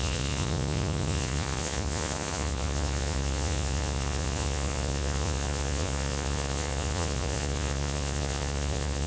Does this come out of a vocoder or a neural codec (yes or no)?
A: yes